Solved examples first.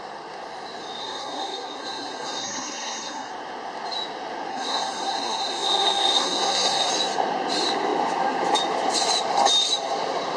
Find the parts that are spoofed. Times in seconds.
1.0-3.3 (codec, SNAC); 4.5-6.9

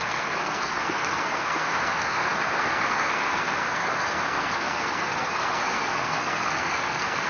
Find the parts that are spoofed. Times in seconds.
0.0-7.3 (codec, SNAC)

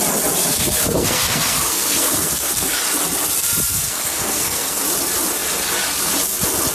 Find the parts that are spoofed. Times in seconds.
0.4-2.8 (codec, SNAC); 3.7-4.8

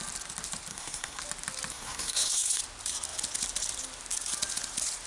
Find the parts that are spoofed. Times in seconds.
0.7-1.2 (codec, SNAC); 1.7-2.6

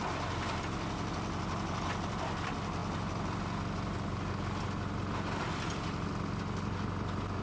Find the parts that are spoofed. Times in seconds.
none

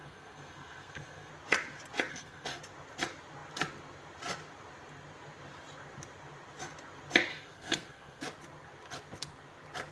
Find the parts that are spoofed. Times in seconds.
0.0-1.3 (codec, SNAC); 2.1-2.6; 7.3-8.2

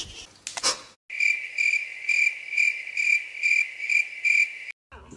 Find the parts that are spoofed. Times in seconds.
none

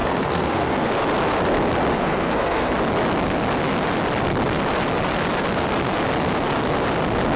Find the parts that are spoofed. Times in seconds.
0.0-0.9 (codec, SNAC); 1.9-2.7